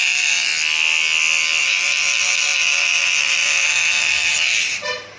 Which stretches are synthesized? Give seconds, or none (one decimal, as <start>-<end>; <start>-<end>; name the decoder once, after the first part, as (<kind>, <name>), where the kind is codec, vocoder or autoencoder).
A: 0.0-0.5 (vocoder, BigVGAN v2); 1.6-5.2